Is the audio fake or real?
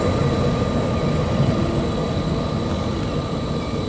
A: real